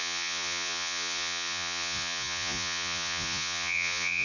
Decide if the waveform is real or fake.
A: fake